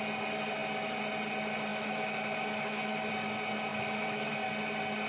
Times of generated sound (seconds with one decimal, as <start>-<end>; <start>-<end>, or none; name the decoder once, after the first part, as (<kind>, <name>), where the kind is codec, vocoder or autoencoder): 1.7-3.1 (autoencoder, DAC-VAE); 3.7-4.3